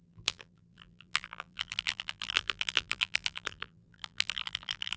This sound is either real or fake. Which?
fake